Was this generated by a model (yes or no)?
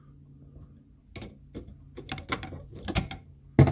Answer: no